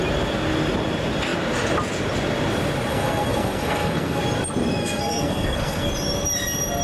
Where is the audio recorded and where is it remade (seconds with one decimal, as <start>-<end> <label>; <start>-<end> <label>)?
0.0-2.9 recorded; 2.9-4.2 remade; 4.2-4.8 recorded; 4.8-5.9 remade; 5.9-6.8 recorded